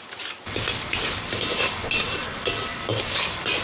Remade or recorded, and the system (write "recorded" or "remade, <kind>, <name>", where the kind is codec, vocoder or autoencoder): recorded